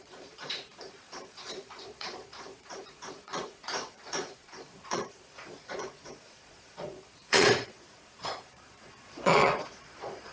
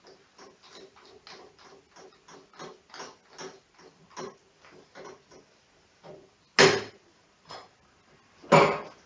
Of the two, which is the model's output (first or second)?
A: first